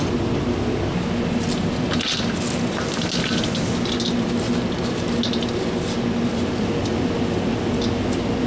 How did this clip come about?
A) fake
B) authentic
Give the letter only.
B